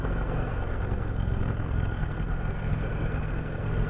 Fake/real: fake